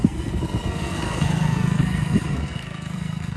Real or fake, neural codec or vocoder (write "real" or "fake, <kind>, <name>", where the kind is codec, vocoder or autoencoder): fake, codec, SNAC